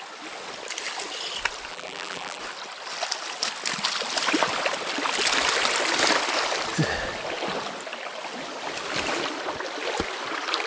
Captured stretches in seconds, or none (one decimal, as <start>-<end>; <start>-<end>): 0.0-1.7; 2.4-10.7